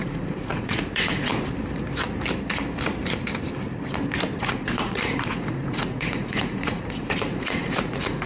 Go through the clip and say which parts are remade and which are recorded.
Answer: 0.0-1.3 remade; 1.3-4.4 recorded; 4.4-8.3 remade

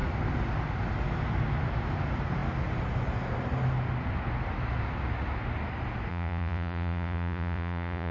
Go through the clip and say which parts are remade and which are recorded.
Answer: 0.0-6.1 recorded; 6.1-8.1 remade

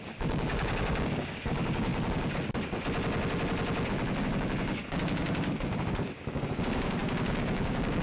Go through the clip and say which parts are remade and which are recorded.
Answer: 0.0-1.9 remade; 1.9-4.2 recorded; 4.2-8.0 remade

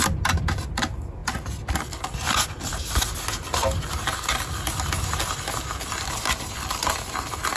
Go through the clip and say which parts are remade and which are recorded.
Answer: 0.0-7.6 recorded

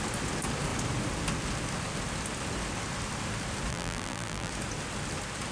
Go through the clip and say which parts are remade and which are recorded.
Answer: 0.0-3.7 recorded; 3.7-4.5 remade; 4.5-5.5 recorded

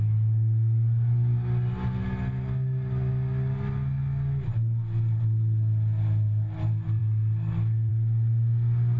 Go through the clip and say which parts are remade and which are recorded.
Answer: 0.0-9.0 recorded

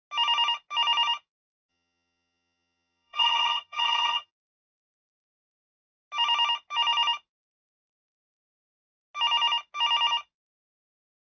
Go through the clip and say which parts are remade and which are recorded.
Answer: 0.0-1.7 recorded; 1.7-4.3 remade; 4.3-11.2 recorded

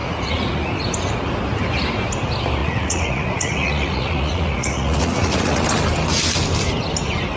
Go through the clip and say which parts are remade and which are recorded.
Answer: 0.0-0.7 remade; 0.7-2.6 recorded; 2.6-5.6 remade; 5.6-7.4 recorded